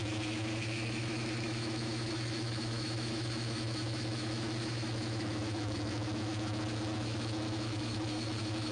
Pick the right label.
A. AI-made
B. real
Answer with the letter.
A